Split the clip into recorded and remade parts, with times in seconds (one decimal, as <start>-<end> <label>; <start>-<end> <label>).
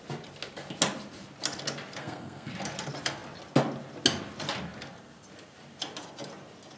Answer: 0.0-2.0 recorded; 2.0-2.5 remade; 2.5-6.8 recorded